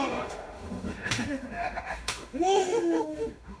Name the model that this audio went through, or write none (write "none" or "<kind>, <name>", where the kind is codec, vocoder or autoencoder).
autoencoder, DAC-VAE